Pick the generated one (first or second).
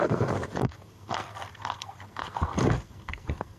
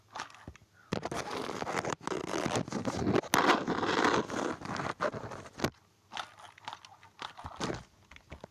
first